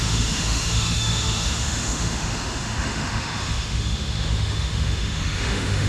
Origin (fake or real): fake